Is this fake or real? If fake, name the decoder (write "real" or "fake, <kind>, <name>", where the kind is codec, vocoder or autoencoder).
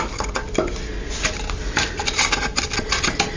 real